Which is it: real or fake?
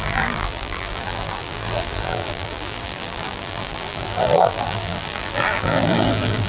fake